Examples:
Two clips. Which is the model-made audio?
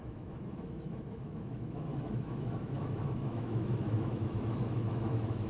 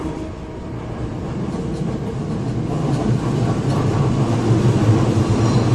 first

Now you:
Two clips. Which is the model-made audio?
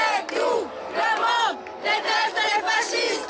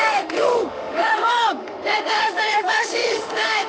second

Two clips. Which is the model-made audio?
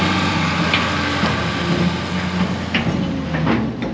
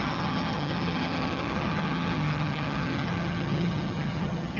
second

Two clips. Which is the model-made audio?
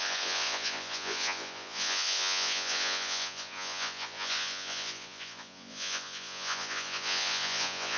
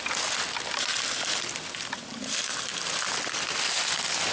first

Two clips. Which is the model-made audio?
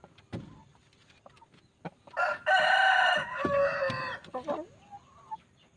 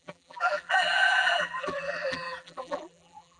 second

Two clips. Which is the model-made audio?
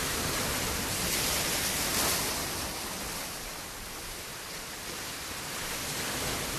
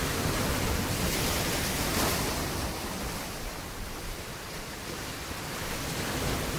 second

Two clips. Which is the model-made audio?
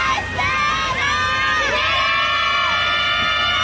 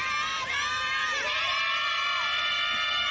second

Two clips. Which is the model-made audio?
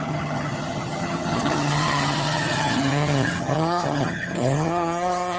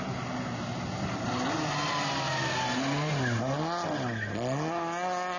first